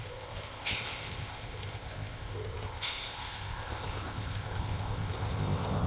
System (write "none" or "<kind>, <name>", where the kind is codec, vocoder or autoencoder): codec, ZipCodec